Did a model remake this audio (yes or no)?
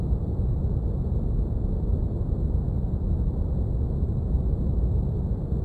no